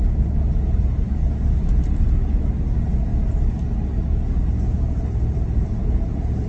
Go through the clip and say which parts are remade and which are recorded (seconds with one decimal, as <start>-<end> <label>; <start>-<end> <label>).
0.0-6.5 recorded